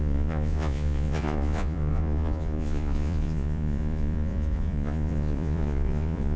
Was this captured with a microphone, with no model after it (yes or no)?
no